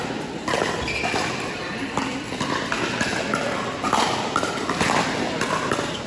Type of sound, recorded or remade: recorded